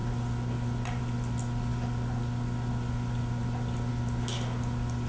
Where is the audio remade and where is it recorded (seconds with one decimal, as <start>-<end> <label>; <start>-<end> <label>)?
0.0-5.1 recorded